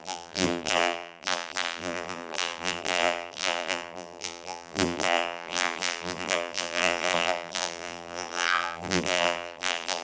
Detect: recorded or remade remade